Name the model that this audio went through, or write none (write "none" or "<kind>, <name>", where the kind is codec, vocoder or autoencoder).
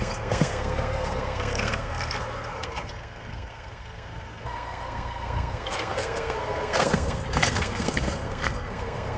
codec, SNAC